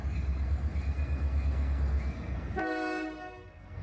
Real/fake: fake